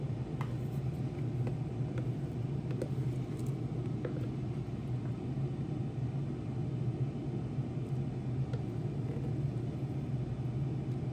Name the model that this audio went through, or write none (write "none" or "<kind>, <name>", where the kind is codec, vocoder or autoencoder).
none